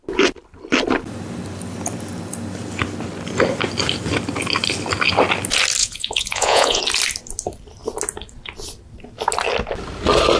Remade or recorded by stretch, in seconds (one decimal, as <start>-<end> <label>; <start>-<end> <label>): 0.0-5.8 recorded; 5.8-6.8 remade; 6.8-10.4 recorded